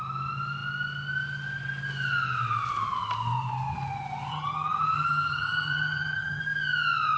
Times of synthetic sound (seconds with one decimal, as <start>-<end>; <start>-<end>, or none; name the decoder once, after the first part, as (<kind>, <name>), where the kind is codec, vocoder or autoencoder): 4.3-6.4 (vocoder, HiFi-GAN)